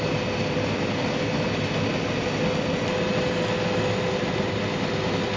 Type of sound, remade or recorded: recorded